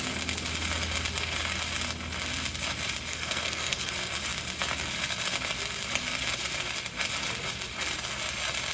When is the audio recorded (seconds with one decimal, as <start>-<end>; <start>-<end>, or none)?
0.0-3.1; 3.9-8.7